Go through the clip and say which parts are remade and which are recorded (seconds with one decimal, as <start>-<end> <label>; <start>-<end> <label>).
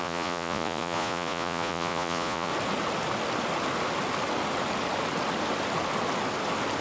0.0-2.5 remade; 2.5-6.8 recorded